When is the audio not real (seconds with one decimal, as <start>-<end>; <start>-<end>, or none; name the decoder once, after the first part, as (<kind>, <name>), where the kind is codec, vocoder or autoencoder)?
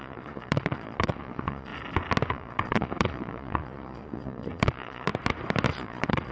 0.0-1.7 (vocoder, Vocos); 2.3-5.1; 5.7-6.3